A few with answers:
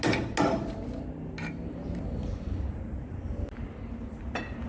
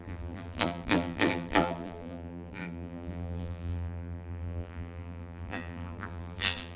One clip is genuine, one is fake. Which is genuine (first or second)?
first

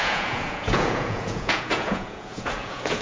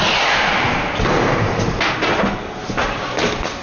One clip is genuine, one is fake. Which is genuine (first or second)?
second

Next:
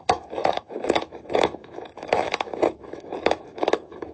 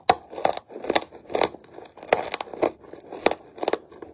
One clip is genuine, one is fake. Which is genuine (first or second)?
second